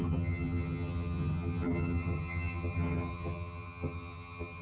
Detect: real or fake fake